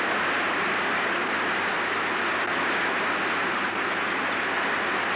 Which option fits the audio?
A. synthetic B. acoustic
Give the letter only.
B